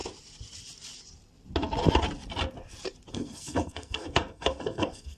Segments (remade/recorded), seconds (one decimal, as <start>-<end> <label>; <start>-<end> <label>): 0.0-3.1 recorded; 3.1-5.2 remade